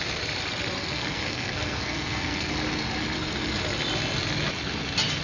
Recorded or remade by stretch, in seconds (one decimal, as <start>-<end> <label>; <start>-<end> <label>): 0.0-0.8 recorded; 0.8-2.5 remade; 2.5-5.2 recorded

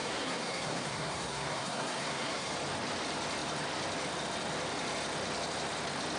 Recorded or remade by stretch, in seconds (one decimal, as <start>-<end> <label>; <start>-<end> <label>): 0.0-2.5 remade; 2.5-6.2 recorded

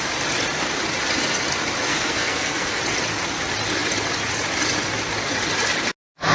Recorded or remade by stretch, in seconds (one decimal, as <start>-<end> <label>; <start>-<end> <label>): 0.0-1.9 recorded; 1.9-2.8 remade; 2.8-6.3 recorded

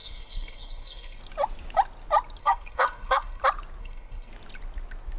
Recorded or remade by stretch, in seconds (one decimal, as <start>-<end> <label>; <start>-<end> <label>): 0.0-1.2 remade; 1.2-2.4 recorded; 2.4-3.4 remade; 3.4-3.8 recorded; 3.8-4.3 remade; 4.3-5.2 recorded

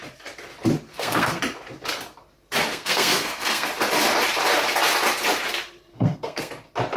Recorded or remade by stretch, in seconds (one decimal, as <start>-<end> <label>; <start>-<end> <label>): 0.0-0.9 recorded; 0.9-1.4 remade; 1.4-2.7 recorded; 2.7-3.7 remade; 3.7-5.9 recorded; 5.9-6.5 remade; 6.5-7.0 recorded

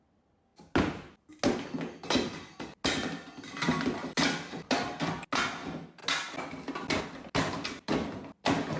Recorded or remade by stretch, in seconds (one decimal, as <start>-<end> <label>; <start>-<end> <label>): 0.0-8.8 recorded

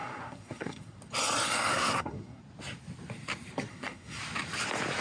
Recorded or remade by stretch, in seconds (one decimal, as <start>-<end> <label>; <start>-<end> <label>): 0.0-1.0 remade; 1.0-1.7 recorded; 1.7-2.4 remade; 2.4-3.7 recorded; 3.7-4.2 remade; 4.2-5.0 recorded

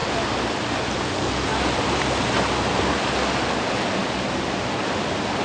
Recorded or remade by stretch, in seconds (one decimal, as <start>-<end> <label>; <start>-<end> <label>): 0.0-5.4 recorded